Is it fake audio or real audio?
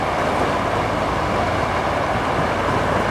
real